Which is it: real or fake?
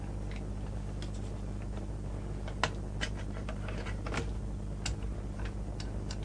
real